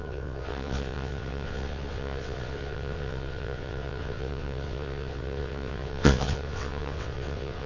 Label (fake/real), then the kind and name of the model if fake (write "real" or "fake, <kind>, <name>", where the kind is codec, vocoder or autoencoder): fake, vocoder, WaveNeXt